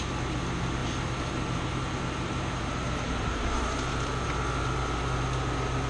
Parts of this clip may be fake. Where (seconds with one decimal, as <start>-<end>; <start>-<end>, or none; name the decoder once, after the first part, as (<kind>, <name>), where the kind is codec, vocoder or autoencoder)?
0.8-4.3 (vocoder, BigVGAN v2)